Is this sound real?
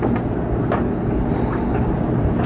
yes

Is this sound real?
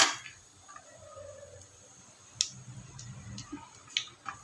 yes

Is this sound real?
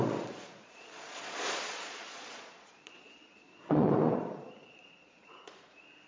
no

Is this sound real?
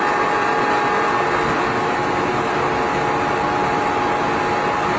yes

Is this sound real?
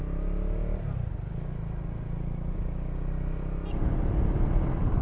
yes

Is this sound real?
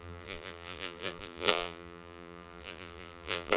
no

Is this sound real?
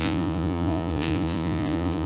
no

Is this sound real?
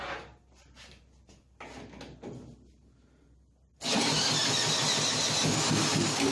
yes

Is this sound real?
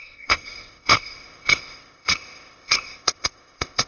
no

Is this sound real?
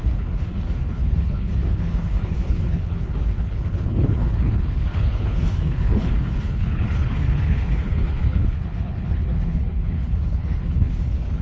no